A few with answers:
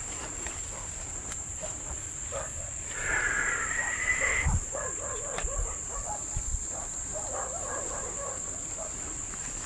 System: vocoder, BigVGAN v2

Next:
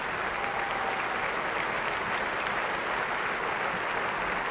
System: none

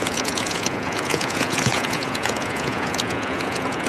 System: vocoder, Vocos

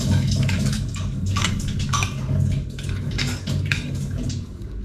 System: codec, DAC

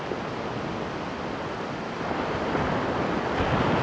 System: none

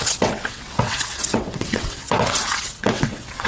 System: vocoder, WaveNeXt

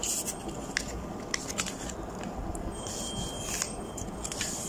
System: none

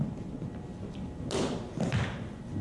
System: none